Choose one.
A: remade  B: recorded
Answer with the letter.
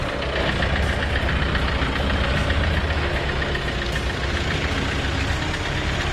B